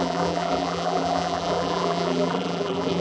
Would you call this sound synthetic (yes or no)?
yes